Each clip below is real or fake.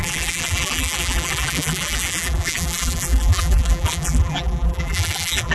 fake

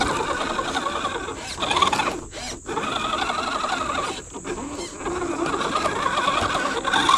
real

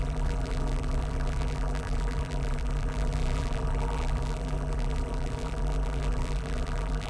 fake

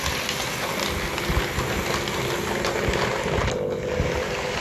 real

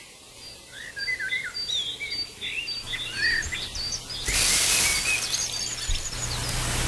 real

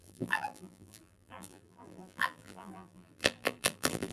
fake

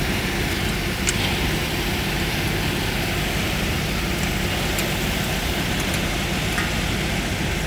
real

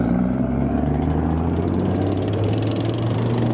fake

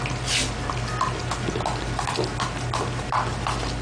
real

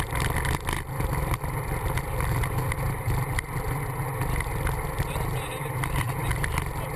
real